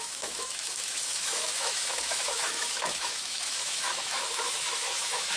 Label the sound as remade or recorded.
remade